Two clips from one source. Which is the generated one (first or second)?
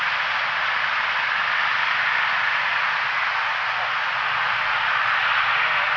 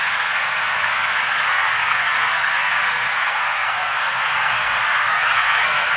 second